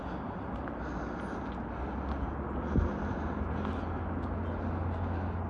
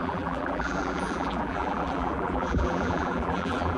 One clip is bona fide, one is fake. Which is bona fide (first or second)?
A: first